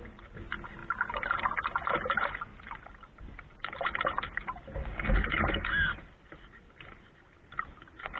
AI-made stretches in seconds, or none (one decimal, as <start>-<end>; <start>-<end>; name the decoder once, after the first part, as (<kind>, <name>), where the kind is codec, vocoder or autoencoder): 4.8-6.0 (codec, DAC)